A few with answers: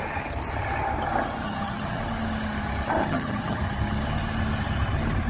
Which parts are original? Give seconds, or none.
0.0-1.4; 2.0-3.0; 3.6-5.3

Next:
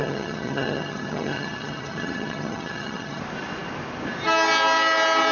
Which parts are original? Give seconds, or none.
3.2-5.3

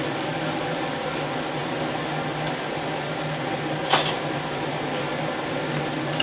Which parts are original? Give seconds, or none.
0.0-6.2

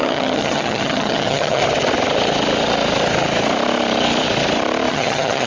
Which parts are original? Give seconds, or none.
1.6-4.9